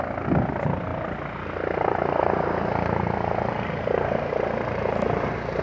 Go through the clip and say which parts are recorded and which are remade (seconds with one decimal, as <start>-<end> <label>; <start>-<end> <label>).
0.0-5.6 recorded